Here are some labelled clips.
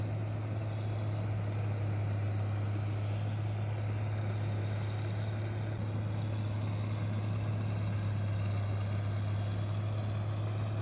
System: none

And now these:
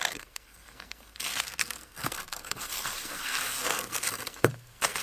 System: codec, SNAC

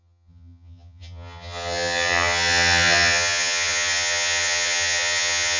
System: vocoder, HiFi-GAN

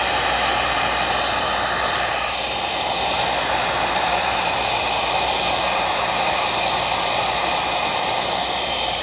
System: none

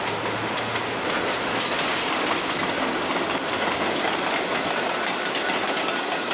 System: none